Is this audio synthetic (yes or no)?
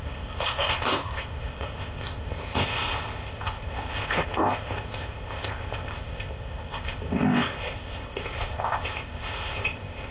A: yes